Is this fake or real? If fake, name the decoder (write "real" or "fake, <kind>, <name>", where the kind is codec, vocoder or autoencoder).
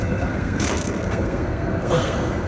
fake, codec, SNAC